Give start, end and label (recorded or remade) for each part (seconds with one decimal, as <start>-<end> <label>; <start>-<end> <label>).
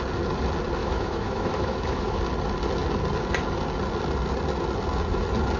0.0-0.8 recorded; 0.8-2.2 remade; 2.2-5.6 recorded